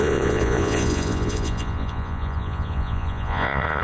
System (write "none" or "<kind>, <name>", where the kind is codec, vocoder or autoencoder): vocoder, Vocos